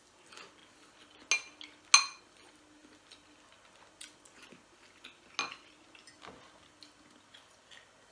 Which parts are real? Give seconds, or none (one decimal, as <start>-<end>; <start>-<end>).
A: 0.0-8.1